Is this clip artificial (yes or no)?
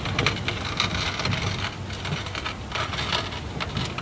no